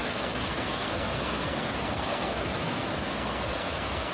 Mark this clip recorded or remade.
remade